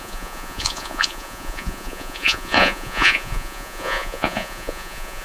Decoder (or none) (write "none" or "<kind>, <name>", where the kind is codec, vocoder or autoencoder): vocoder, Vocos